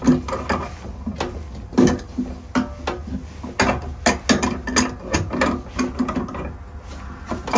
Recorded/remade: recorded